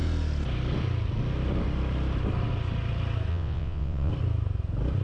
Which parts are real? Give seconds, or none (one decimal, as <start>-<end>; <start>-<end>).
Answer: 0.0-3.3; 4.1-5.0

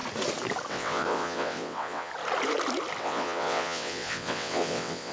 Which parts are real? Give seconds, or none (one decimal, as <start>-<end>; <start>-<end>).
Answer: 0.0-0.7; 2.1-3.0

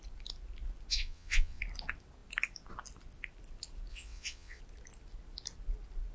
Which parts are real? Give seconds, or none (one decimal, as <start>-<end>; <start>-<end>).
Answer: 0.0-0.9; 1.6-3.9; 4.6-6.1

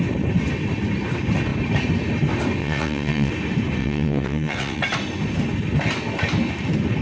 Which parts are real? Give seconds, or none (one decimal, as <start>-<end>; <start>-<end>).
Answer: 0.0-2.6; 3.3-3.8; 4.8-7.0

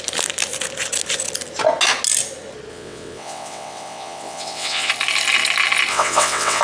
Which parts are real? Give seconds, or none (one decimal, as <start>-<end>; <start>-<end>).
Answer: 0.0-2.7; 4.9-5.9

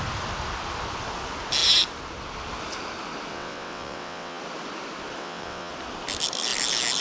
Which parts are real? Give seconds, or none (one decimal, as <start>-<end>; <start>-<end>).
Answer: 0.0-3.3; 4.4-5.2; 5.7-7.0

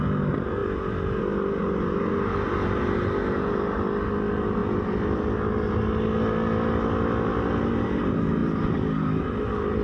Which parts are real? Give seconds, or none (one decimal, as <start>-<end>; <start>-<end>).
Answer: 0.0-9.8

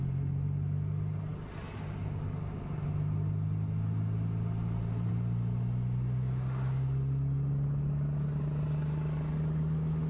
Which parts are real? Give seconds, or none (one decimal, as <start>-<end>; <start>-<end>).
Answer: 0.0-10.1